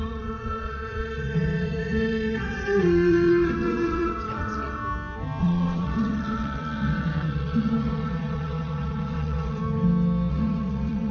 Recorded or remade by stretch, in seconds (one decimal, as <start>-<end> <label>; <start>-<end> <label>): 0.0-4.8 remade; 4.8-5.4 recorded; 5.4-9.6 remade; 9.6-10.3 recorded; 10.3-11.1 remade